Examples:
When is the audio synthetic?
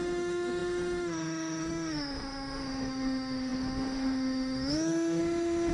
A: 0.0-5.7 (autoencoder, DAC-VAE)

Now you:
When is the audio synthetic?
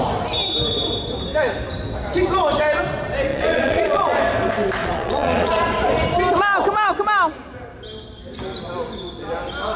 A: 3.3-4.2 (vocoder, Vocos); 4.8-5.6